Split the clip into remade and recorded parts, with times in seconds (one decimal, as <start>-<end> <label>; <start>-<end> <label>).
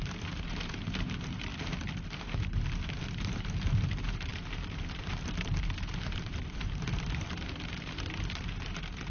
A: 0.0-1.5 remade; 1.5-2.0 recorded; 2.0-9.1 remade